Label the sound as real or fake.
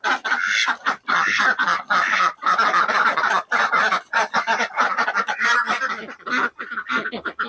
real